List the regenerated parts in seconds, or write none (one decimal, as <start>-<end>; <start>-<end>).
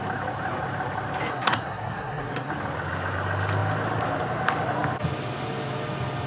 1.3-2.5